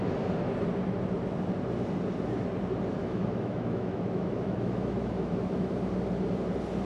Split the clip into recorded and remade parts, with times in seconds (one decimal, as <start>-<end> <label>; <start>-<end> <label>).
0.0-3.0 recorded; 3.0-5.7 remade; 5.7-6.8 recorded